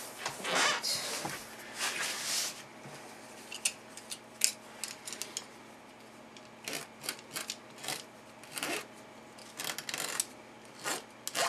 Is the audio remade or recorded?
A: recorded